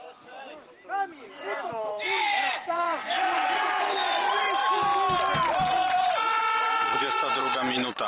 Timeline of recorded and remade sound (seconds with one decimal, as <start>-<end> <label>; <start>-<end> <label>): 0.0-0.5 remade; 0.5-1.2 recorded; 1.2-4.6 remade; 4.6-5.7 recorded; 5.7-8.1 remade